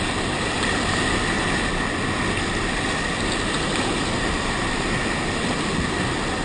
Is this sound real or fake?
real